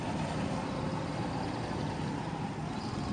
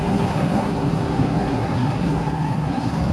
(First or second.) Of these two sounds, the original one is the first